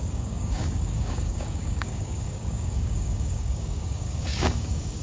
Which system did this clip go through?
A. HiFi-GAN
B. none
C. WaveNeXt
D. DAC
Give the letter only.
D